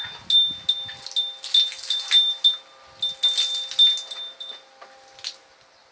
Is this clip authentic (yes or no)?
yes